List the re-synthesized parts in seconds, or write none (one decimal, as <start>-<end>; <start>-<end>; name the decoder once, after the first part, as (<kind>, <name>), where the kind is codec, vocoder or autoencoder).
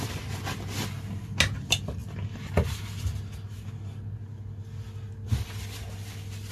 none